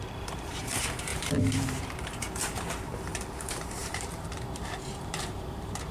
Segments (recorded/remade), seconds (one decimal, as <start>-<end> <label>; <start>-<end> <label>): 0.0-5.9 remade